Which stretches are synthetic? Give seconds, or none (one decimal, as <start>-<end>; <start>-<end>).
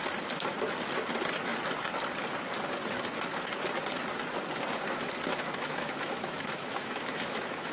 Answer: 5.3-7.7